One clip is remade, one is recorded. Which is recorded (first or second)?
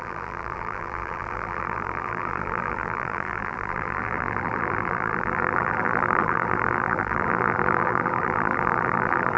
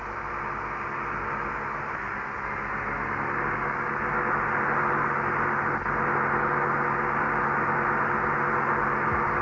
second